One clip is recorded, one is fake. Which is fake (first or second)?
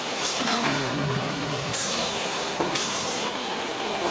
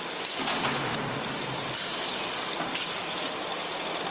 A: first